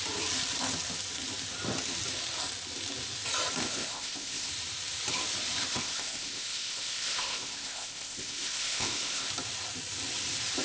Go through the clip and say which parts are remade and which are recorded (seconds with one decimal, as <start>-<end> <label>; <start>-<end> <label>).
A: 0.0-3.6 recorded; 3.6-4.5 remade; 4.5-5.7 recorded; 5.7-9.3 remade; 9.3-10.6 recorded